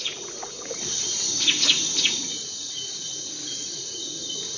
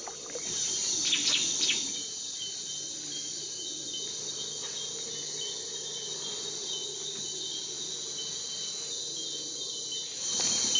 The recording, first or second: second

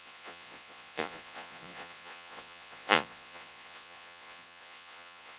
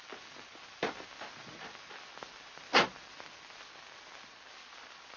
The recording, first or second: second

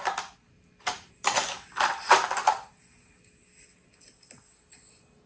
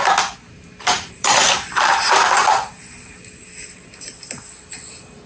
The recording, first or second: first